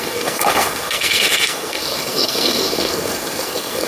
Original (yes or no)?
no